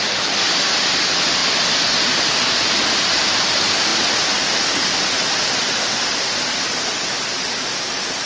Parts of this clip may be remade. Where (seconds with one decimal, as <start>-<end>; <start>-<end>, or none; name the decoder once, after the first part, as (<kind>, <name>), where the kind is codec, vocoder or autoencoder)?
none